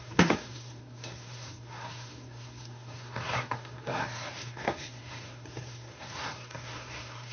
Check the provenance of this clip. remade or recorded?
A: remade